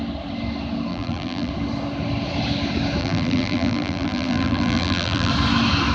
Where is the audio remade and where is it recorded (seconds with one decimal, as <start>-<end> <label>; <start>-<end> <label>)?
0.0-0.9 recorded; 0.9-1.5 remade; 1.5-3.0 recorded; 3.0-5.3 remade; 5.3-5.9 recorded